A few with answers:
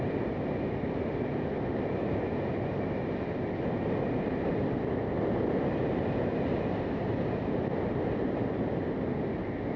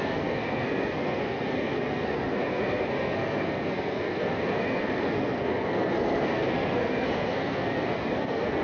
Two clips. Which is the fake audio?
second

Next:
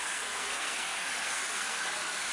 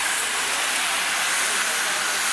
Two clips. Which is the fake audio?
first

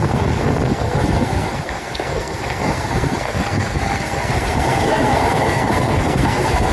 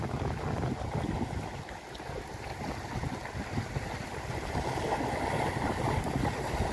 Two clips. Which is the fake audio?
first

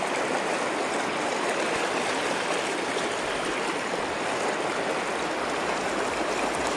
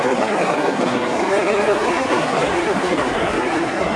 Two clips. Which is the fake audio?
second